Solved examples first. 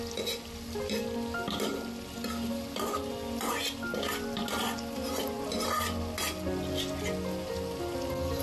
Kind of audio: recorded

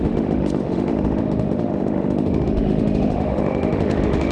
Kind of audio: remade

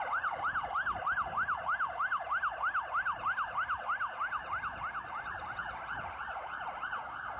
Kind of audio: recorded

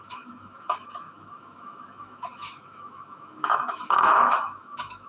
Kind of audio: remade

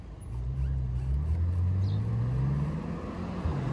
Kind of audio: recorded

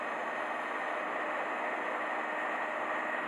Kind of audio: recorded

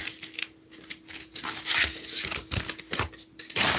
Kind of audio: recorded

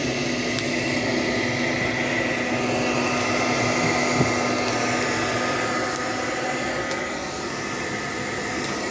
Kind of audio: recorded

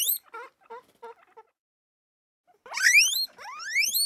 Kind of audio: recorded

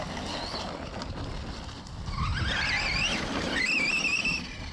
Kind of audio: recorded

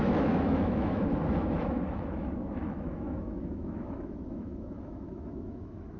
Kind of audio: remade